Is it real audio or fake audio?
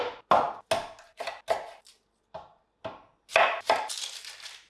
real